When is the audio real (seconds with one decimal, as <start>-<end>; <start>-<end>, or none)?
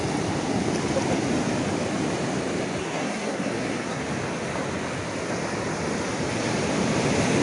0.0-2.8; 4.0-7.4